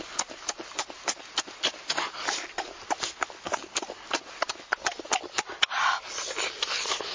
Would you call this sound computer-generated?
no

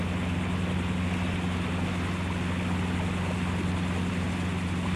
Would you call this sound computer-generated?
no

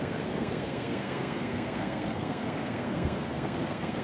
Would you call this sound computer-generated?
yes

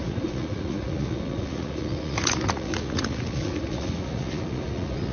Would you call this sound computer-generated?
yes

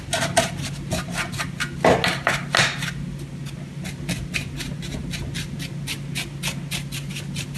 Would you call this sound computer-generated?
no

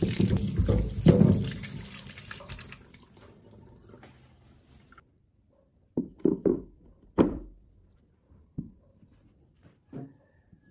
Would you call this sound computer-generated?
no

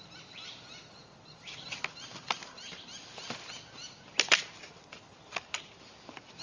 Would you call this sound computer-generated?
no